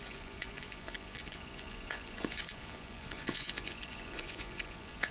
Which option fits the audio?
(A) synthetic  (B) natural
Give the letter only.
A